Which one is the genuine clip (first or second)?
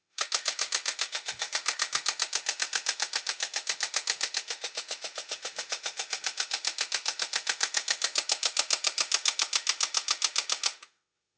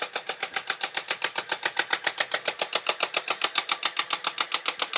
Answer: second